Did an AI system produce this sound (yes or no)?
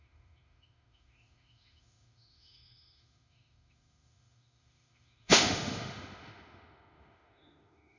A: yes